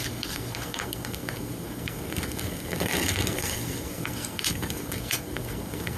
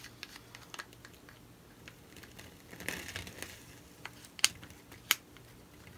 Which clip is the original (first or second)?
second